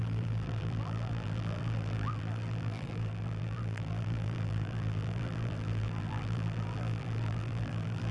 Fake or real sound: fake